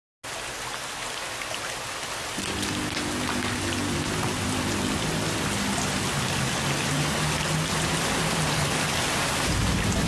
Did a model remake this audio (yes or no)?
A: no